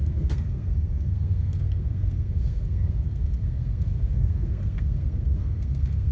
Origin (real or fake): fake